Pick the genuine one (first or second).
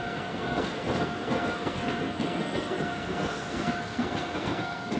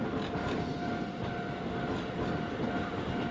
second